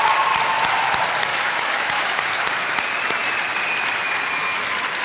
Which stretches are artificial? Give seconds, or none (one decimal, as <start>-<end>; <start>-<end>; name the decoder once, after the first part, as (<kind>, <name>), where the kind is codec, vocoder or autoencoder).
1.3-2.2 (autoencoder, DAC-VAE)